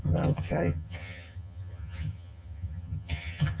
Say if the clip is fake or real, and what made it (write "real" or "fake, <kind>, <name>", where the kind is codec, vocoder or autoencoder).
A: fake, vocoder, HiFi-GAN